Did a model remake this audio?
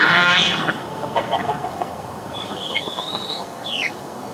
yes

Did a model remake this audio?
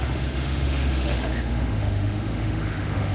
yes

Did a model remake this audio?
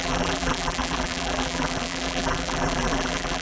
yes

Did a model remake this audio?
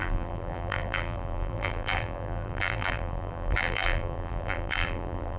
yes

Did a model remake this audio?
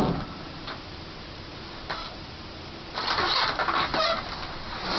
no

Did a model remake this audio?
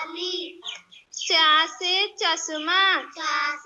no